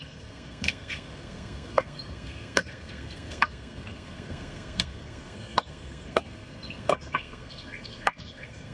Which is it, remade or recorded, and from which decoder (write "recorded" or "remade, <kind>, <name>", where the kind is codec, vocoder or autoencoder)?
remade, codec, SNAC